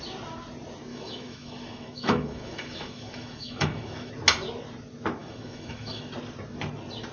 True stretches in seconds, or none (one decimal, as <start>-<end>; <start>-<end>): 0.0-0.9; 4.1-5.2; 6.1-7.1